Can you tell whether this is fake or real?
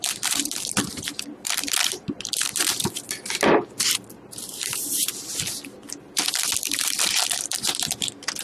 fake